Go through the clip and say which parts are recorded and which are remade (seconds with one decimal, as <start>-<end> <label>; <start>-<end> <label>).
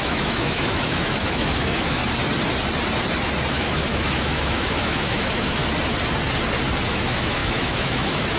0.0-2.0 remade; 2.0-3.5 recorded; 3.5-5.6 remade; 5.6-6.9 recorded; 6.9-8.4 remade